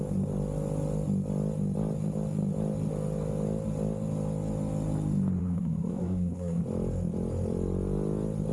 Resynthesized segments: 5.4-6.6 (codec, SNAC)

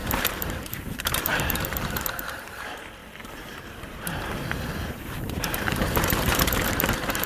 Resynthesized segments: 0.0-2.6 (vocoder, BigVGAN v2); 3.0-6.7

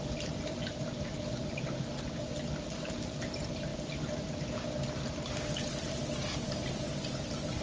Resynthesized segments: none